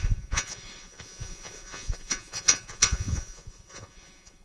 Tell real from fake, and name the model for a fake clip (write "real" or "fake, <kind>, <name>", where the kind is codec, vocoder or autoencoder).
fake, vocoder, Vocos